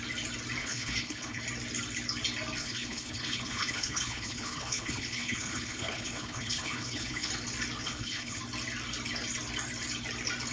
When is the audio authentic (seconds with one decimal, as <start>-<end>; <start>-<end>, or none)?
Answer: 0.0-0.6; 1.4-2.6; 7.3-7.8; 8.4-10.5

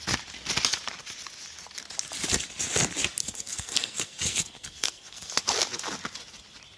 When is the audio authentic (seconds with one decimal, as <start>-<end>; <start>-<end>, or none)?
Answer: 0.0-3.2; 5.4-6.8

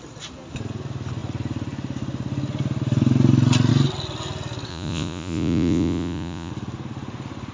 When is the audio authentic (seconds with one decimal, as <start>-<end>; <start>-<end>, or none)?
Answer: 0.0-4.7; 6.5-7.5